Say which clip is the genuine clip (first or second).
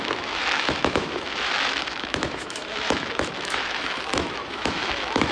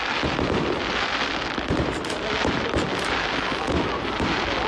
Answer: second